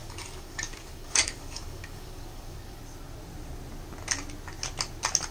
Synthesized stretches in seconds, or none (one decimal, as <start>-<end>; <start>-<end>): 0.0-2.8